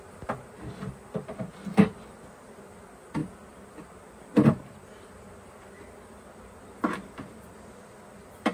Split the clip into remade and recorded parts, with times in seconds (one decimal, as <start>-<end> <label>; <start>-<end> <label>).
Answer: 0.0-8.5 recorded